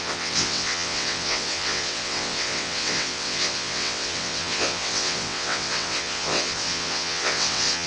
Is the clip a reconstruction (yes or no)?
yes